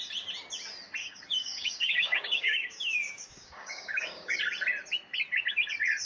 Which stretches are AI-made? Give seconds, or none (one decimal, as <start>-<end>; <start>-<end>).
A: 1.0-4.4